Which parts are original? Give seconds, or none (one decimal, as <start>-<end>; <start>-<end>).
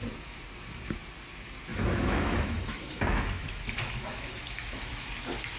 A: 0.0-1.7; 5.1-5.6